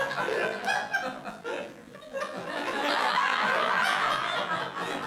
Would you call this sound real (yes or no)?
no